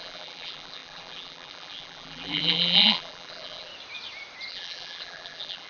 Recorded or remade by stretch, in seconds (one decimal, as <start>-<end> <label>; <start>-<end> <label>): 0.0-3.7 remade; 3.7-4.5 recorded; 4.5-5.7 remade